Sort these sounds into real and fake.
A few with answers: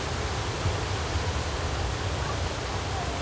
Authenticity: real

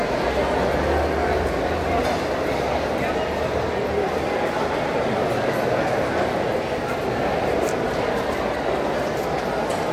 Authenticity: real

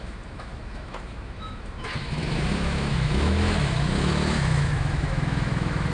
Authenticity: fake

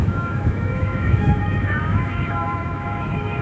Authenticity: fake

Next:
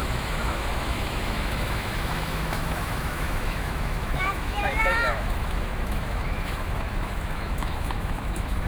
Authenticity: fake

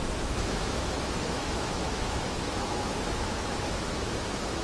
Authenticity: fake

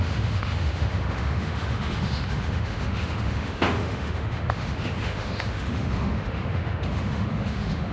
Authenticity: fake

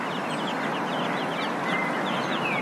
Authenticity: real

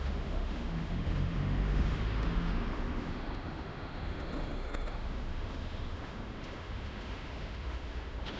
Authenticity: fake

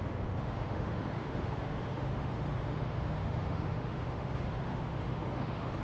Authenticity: fake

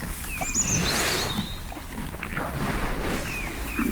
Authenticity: real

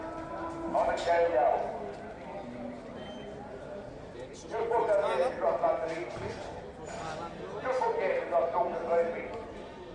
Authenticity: real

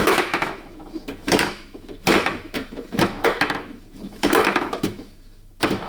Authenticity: fake